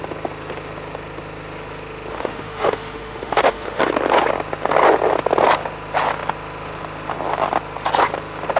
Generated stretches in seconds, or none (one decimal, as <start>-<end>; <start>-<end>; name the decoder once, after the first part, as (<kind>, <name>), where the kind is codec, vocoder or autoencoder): 2.1-3.8 (autoencoder, DAC-VAE)